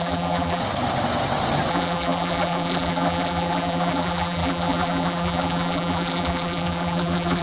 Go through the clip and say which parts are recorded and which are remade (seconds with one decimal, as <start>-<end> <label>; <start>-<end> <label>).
0.0-0.6 remade; 0.6-1.7 recorded; 1.7-7.4 remade